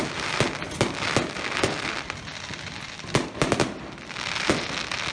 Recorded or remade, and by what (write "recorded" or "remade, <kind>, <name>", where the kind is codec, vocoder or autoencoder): recorded